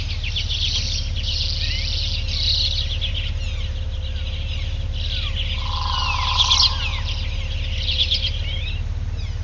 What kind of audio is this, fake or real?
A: real